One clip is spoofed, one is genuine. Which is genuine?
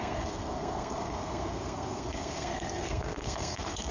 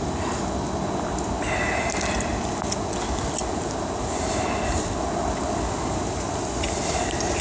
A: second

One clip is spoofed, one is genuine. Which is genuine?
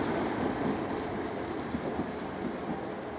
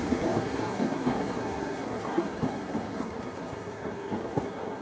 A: first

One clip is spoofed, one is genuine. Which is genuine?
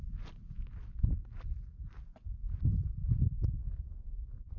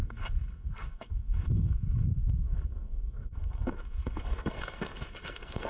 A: first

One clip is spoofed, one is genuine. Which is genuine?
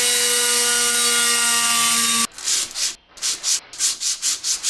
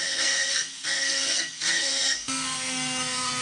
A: first